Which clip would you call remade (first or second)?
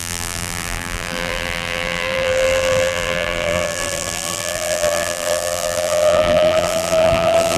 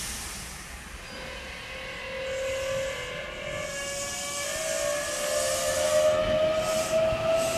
first